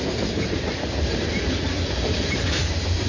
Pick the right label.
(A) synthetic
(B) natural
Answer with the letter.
A